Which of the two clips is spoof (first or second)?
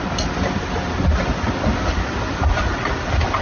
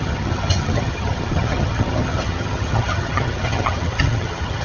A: second